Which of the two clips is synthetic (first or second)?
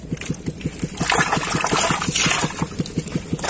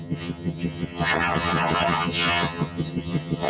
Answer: second